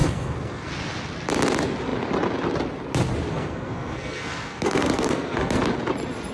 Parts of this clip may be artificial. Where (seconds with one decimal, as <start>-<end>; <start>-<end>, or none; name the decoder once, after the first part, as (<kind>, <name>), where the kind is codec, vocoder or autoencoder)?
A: 0.0-0.7 (codec, SNAC); 3.3-5.6